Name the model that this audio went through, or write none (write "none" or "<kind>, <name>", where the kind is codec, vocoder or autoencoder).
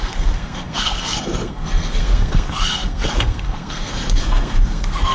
codec, SNAC